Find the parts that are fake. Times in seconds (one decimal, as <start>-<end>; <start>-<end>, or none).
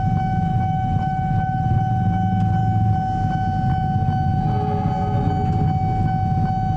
0.5-1.8